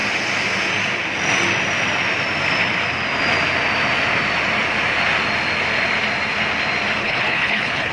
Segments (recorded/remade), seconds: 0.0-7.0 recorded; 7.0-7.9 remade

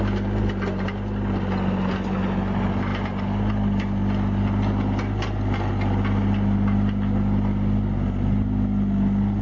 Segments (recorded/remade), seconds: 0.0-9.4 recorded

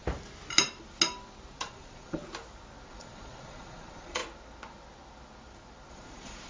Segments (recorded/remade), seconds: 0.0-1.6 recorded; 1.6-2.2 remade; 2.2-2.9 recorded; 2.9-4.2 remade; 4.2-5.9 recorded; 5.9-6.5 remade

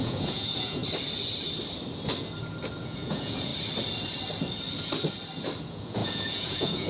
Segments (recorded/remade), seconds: 0.0-0.8 remade; 0.8-2.8 recorded; 2.8-3.5 remade; 3.5-5.6 recorded; 5.6-6.9 remade

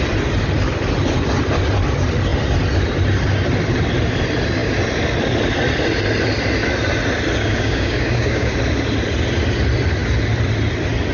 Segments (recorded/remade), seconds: 0.0-7.4 recorded; 7.4-8.5 remade; 8.5-11.1 recorded

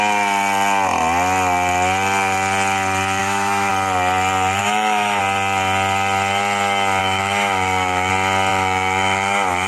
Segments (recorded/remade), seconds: 0.0-3.2 recorded; 3.2-3.7 remade; 3.7-4.6 recorded; 4.6-5.2 remade; 5.2-7.0 recorded; 7.0-8.1 remade; 8.1-8.5 recorded; 8.5-9.7 remade

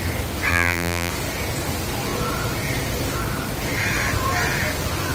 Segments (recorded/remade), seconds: 0.0-0.5 recorded; 0.5-1.1 remade; 1.1-5.1 recorded

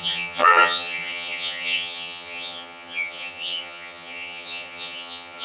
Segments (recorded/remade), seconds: 0.0-5.4 remade